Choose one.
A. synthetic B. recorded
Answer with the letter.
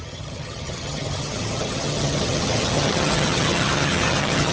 A